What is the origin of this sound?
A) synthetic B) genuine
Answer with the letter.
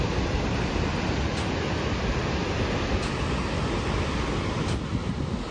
B